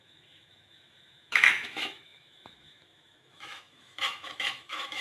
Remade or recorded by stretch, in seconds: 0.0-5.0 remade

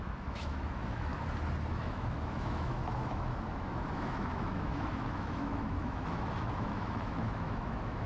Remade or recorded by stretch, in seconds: 0.0-1.1 remade; 1.1-1.7 recorded; 1.7-8.1 remade

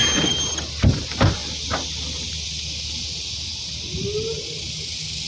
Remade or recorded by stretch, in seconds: 0.0-5.3 recorded

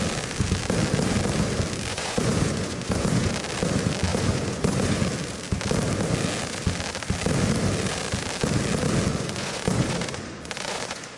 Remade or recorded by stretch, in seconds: 0.0-1.9 recorded; 1.9-3.3 remade; 3.3-4.1 recorded; 4.1-5.0 remade; 5.0-9.1 recorded; 9.1-11.2 remade

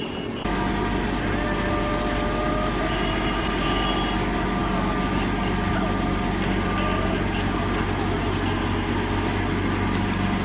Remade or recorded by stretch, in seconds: 0.0-10.4 recorded

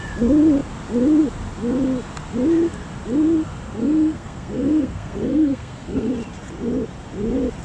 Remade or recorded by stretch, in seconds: 0.0-3.8 recorded; 3.8-6.1 remade; 6.1-7.6 recorded

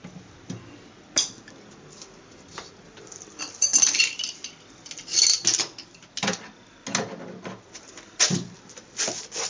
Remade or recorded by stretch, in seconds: 0.0-9.5 recorded